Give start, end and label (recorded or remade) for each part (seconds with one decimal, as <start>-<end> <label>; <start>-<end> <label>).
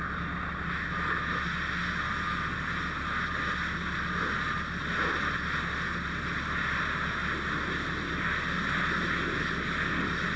0.0-10.4 recorded